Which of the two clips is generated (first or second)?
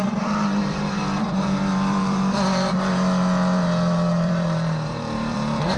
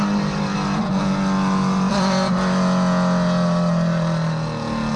first